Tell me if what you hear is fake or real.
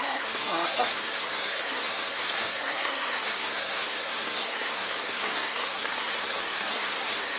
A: fake